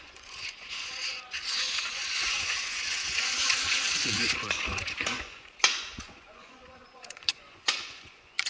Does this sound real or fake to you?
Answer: fake